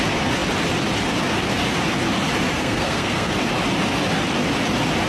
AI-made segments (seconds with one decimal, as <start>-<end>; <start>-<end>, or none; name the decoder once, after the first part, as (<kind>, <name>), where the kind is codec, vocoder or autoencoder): 2.6-3.3 (codec, SNAC)